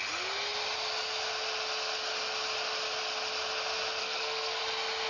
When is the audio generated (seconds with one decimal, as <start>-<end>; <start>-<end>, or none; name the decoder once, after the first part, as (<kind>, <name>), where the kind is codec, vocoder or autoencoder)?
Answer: 4.0-4.6 (codec, SNAC)